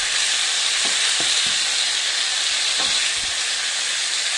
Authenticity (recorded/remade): recorded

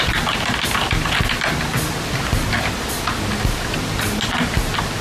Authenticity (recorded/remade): recorded